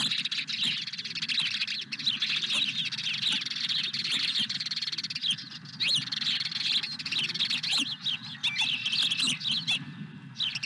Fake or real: real